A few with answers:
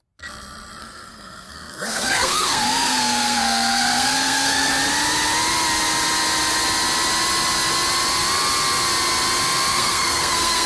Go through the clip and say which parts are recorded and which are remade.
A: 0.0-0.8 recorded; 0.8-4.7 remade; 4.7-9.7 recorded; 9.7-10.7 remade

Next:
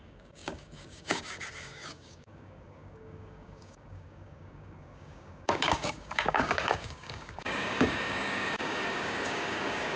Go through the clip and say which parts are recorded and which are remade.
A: 0.0-10.0 remade

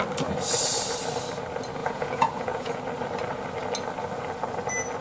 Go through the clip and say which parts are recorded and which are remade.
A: 0.0-1.8 recorded; 1.8-2.8 remade; 2.8-5.0 recorded